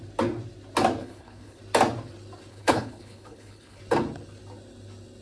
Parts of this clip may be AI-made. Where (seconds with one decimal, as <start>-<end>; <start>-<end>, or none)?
1.0-1.6; 2.5-3.8